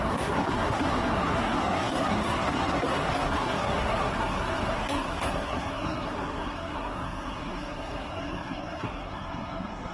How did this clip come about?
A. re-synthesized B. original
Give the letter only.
A